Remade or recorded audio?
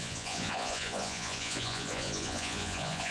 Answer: remade